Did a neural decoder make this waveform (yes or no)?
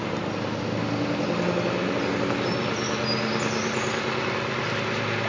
no